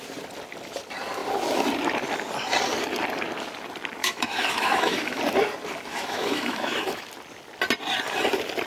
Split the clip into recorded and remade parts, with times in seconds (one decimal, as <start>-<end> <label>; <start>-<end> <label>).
0.0-4.0 recorded; 4.0-5.2 remade; 5.2-5.9 recorded; 5.9-7.1 remade; 7.1-8.7 recorded